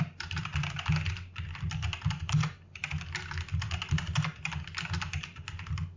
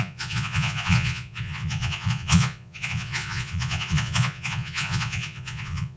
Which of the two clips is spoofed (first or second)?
second